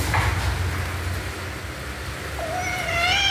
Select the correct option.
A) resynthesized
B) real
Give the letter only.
B